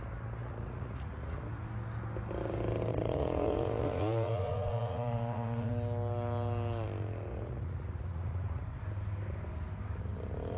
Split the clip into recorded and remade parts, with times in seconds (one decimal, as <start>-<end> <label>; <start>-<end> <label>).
0.0-0.4 recorded; 0.4-1.4 remade; 1.4-2.9 recorded; 2.9-5.7 remade; 5.7-7.3 recorded; 7.3-8.6 remade; 8.6-10.6 recorded

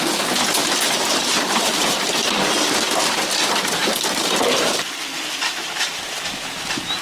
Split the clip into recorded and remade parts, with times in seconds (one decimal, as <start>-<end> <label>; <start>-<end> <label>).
0.0-0.6 recorded; 0.6-2.5 remade; 2.5-3.8 recorded; 3.8-6.2 remade; 6.2-7.0 recorded

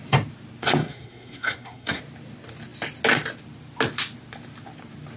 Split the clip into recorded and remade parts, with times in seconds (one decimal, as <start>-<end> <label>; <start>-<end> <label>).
0.0-0.8 recorded; 0.8-2.0 remade; 2.0-5.2 recorded

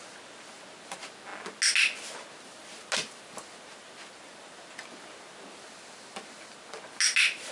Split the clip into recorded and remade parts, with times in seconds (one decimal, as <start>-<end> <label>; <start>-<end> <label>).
0.0-7.5 recorded

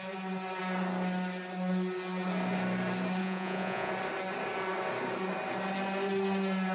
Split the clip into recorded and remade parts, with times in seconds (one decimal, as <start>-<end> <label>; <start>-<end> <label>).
0.0-3.2 recorded; 3.2-3.9 remade; 3.9-6.7 recorded